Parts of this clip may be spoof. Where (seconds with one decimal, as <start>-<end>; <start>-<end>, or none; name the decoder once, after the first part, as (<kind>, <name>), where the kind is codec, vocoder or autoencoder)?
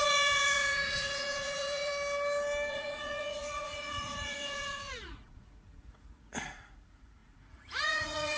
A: 0.0-1.9 (vocoder, Vocos); 2.7-8.4